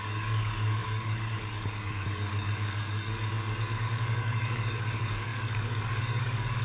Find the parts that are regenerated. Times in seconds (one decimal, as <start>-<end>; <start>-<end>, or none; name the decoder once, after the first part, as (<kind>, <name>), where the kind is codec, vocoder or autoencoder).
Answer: 0.0-6.6 (codec, DAC)